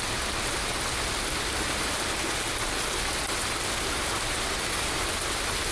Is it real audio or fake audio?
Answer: real